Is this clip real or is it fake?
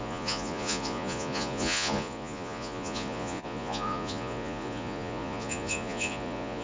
fake